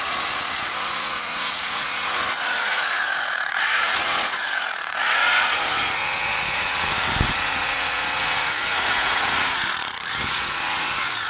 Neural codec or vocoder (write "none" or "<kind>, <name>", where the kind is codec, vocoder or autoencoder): vocoder, Vocos